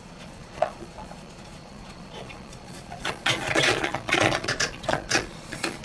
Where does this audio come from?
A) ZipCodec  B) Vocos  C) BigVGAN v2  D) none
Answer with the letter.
B